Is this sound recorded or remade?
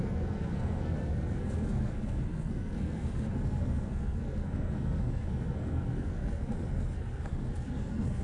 remade